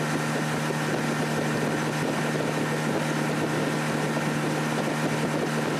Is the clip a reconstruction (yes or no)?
no